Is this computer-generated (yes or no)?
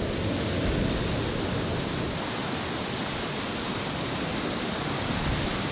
no